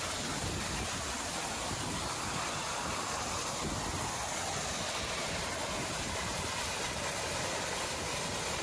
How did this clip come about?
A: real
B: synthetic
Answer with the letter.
A